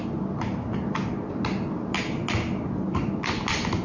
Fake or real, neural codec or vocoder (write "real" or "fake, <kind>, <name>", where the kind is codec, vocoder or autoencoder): real